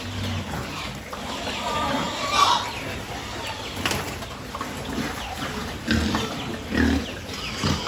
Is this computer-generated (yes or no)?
no